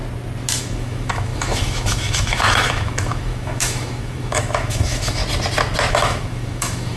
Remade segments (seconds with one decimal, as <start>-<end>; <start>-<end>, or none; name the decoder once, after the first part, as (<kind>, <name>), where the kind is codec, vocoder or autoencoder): 0.6-5.2 (autoencoder, DAC-VAE); 5.9-7.0